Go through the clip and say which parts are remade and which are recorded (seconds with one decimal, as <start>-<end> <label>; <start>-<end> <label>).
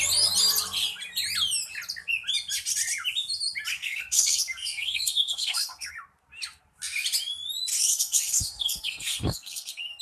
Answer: 0.0-3.7 recorded; 3.7-5.9 remade; 5.9-7.7 recorded; 7.7-10.0 remade